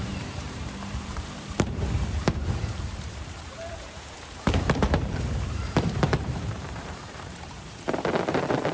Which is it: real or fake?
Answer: fake